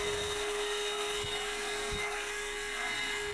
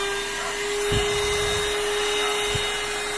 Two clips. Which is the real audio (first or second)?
second